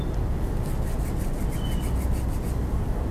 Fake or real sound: real